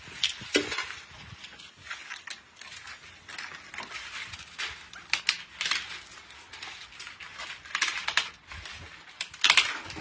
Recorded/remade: recorded